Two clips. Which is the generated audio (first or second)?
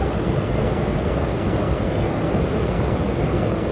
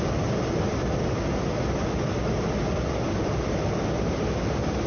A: first